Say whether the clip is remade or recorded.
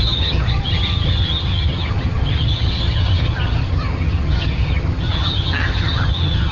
remade